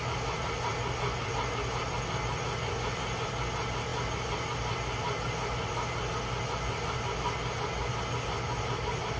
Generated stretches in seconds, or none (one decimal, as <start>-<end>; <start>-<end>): none